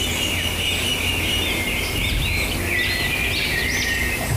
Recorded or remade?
recorded